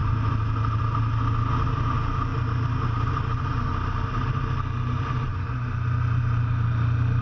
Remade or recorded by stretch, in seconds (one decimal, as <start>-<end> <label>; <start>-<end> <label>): 0.0-7.2 recorded